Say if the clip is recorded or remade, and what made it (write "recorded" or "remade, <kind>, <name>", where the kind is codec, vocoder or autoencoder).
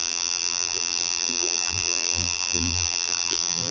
remade, vocoder, BigVGAN v2